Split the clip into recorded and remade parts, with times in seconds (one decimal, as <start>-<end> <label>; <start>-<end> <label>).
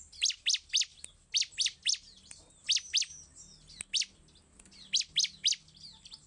0.0-6.3 recorded